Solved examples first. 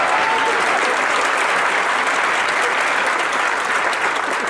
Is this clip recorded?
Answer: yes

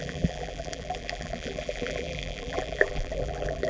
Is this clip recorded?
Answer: no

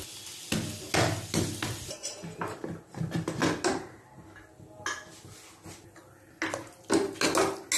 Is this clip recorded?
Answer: yes